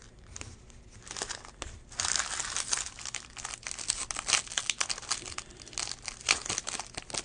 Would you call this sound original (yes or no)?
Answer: yes